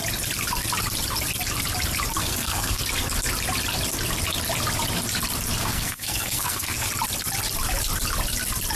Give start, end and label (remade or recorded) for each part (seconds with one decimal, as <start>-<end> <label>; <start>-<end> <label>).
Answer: 0.0-2.2 recorded; 2.2-2.8 remade; 2.8-5.6 recorded; 5.6-6.9 remade; 6.9-8.8 recorded